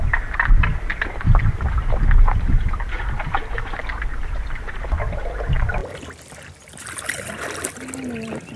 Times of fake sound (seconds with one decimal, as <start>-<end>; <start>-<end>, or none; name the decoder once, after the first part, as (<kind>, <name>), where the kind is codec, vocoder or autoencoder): none